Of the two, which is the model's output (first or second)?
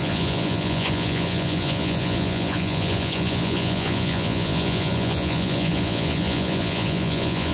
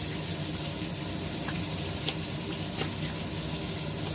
first